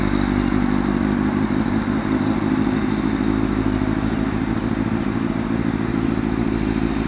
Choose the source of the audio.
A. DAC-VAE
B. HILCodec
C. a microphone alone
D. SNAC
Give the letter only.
C